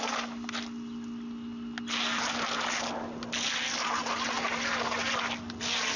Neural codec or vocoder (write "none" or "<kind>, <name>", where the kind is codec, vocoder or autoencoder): none